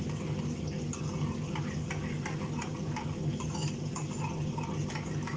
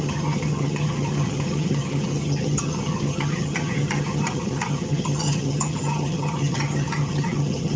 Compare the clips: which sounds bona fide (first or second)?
first